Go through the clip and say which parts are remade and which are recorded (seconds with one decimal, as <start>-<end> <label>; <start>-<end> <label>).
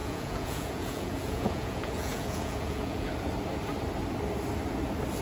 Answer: 0.0-3.1 remade; 3.1-5.2 recorded